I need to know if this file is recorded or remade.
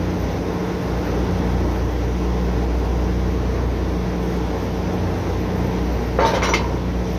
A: recorded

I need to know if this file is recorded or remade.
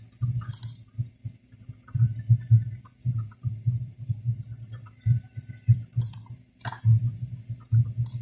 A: recorded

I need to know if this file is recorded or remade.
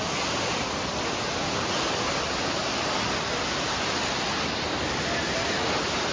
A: recorded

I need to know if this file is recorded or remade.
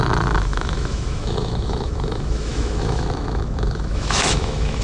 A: remade